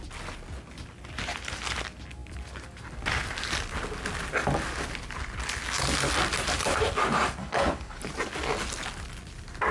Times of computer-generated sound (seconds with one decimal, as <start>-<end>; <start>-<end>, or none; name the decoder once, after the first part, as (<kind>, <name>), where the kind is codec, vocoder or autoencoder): 7.4-8.0 (codec, HILCodec)